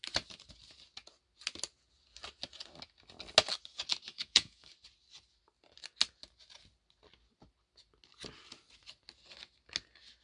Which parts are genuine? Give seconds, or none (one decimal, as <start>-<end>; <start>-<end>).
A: 0.0-4.1; 4.7-10.2